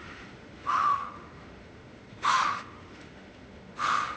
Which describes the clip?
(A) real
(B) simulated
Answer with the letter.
B